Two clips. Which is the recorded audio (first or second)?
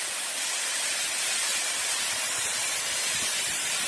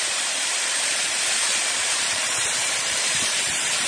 first